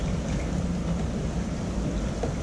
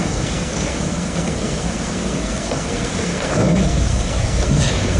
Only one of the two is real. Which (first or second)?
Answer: first